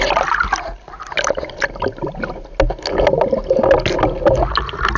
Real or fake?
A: real